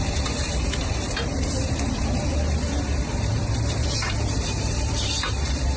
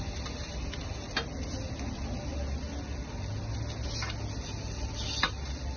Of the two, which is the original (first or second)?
second